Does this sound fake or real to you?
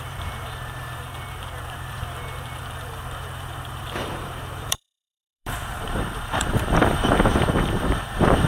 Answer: fake